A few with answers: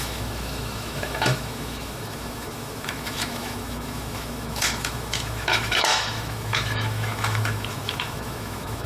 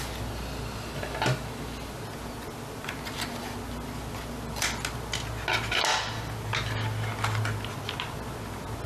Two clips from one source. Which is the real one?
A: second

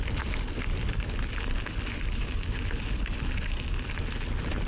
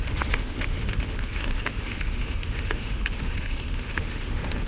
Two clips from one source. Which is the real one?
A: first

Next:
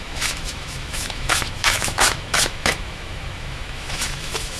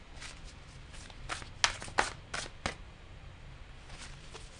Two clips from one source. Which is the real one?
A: second